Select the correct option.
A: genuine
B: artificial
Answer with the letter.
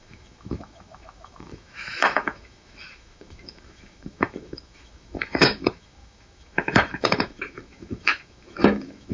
B